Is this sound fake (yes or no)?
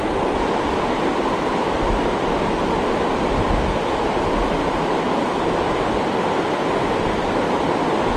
no